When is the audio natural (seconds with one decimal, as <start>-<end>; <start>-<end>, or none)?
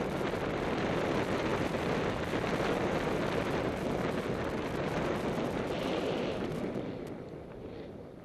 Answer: 0.0-8.2